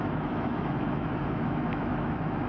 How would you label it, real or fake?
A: fake